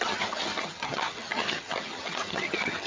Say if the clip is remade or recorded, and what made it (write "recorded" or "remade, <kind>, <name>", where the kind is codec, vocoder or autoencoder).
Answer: remade, vocoder, HiFi-GAN